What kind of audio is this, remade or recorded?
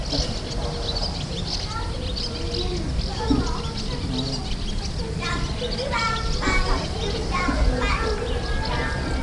recorded